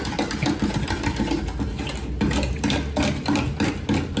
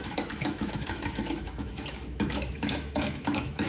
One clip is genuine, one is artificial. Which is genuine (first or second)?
first